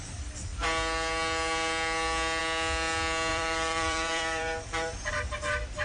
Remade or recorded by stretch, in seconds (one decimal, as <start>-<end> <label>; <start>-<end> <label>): 0.0-3.3 recorded; 3.3-5.1 remade; 5.1-5.8 recorded